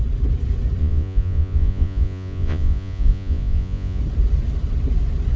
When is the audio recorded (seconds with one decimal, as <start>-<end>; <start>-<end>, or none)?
0.0-0.8; 4.0-5.4